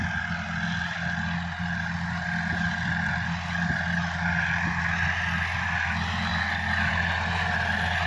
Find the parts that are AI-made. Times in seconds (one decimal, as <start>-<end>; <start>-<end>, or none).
none